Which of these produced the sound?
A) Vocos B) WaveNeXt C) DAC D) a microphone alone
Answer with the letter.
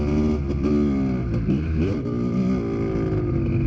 D